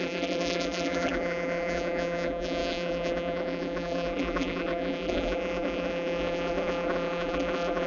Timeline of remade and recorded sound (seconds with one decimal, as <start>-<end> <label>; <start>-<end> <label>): 0.0-7.9 remade